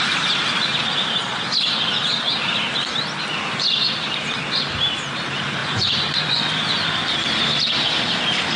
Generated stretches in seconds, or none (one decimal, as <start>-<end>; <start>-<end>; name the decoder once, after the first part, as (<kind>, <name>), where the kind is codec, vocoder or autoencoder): 5.6-6.5 (vocoder, Vocos)